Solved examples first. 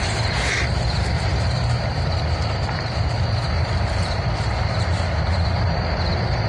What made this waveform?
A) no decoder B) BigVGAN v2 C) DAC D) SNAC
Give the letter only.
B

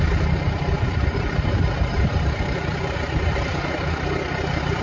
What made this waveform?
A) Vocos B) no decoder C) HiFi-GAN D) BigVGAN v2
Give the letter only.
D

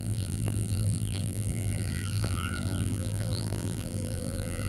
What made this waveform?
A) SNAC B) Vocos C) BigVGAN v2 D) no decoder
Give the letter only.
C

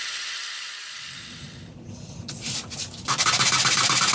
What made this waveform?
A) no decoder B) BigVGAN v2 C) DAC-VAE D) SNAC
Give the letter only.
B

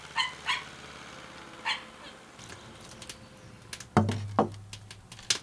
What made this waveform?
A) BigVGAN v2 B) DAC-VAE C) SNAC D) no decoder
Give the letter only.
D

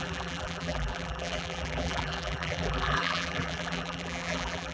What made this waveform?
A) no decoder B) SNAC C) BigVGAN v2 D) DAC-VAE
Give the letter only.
C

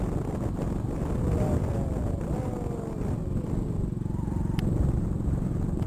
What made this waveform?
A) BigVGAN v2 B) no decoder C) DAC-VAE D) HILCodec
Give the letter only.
B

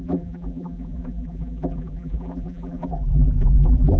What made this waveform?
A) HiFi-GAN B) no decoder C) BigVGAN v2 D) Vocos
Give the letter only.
C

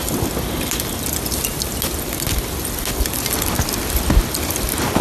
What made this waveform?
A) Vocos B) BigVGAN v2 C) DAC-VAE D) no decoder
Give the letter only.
D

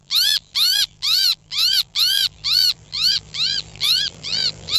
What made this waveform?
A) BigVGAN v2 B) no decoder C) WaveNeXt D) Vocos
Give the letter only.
A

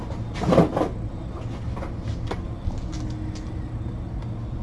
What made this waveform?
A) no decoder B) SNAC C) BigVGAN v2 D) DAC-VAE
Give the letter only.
A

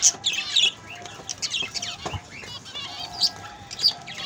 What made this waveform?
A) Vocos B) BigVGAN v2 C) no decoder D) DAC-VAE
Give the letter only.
C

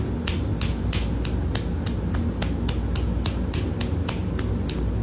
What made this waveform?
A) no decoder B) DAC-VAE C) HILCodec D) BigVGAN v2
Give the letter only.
A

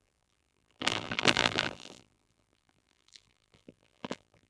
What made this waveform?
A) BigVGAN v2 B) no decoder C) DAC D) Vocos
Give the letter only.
A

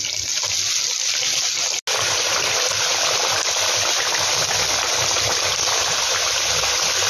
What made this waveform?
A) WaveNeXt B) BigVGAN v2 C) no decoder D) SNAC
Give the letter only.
C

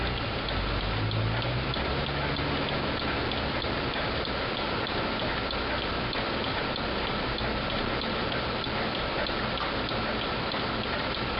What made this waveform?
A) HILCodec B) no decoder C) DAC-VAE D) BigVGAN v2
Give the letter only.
B